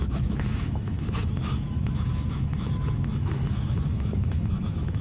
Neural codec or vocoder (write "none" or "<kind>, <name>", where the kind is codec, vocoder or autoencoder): autoencoder, DAC-VAE